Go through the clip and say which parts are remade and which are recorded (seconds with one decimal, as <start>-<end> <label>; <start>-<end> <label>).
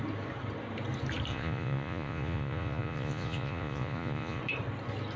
0.0-1.3 recorded; 1.3-4.4 remade; 4.4-5.2 recorded